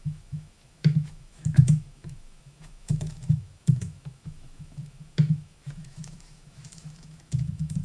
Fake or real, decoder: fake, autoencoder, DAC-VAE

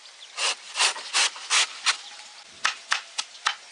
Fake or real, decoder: real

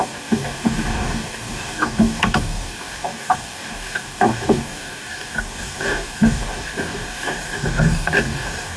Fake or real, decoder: fake, codec, DAC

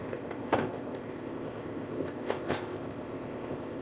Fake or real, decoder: fake, codec, ZipCodec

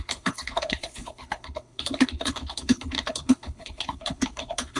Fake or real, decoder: fake, codec, HILCodec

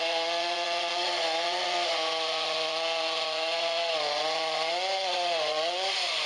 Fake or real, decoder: fake, vocoder, Vocos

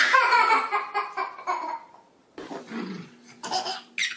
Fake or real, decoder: real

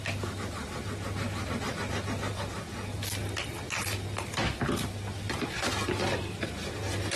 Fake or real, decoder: real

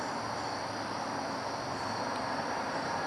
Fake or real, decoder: real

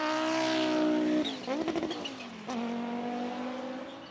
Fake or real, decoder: real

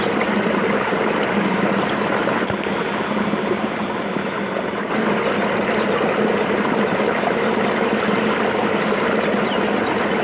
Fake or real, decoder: real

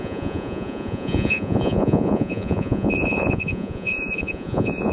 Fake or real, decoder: fake, vocoder, Vocos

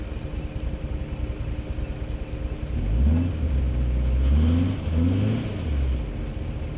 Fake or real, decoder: real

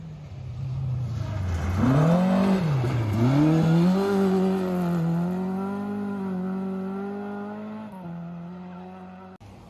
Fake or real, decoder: real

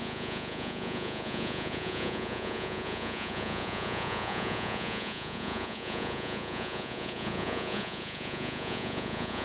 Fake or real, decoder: fake, vocoder, Vocos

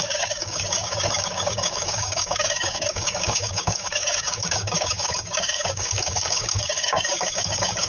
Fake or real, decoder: fake, codec, DAC